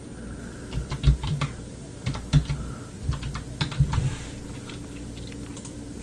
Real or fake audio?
fake